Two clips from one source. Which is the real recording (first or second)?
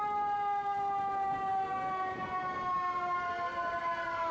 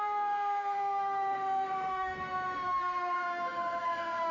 first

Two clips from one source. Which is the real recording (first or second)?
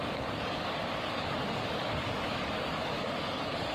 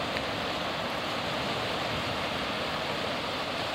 second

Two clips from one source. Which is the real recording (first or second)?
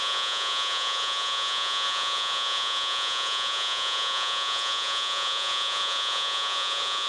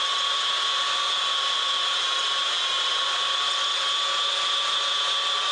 second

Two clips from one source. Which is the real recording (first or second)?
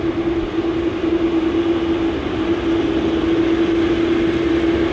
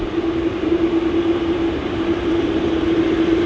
first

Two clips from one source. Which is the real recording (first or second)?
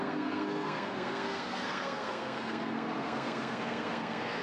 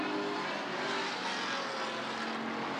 second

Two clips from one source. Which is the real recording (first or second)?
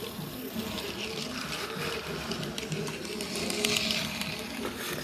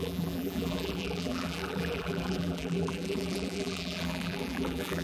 first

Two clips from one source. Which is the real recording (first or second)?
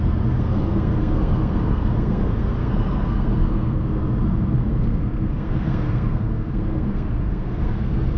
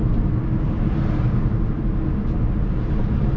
second